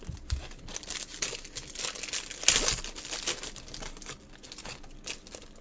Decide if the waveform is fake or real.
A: real